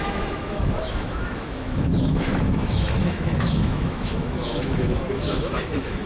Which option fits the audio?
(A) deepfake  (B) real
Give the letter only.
A